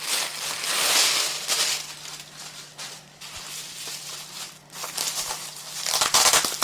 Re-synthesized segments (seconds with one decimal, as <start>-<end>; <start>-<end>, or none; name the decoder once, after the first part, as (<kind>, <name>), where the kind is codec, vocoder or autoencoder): 2.4-5.9 (vocoder, BigVGAN v2)